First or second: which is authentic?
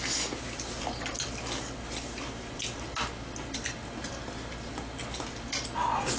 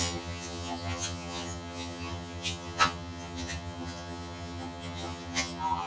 first